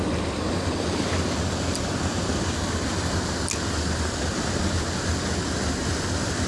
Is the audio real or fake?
real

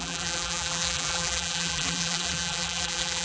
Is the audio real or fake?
fake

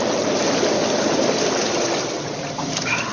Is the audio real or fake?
real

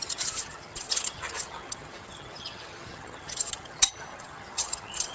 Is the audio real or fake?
fake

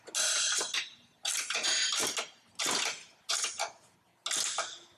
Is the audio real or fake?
real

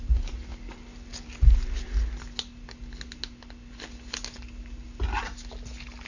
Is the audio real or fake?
real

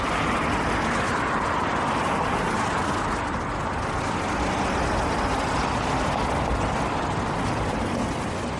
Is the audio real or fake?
real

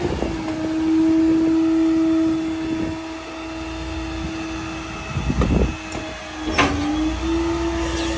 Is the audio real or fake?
real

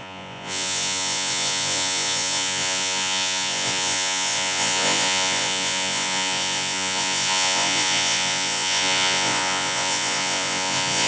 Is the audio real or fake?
fake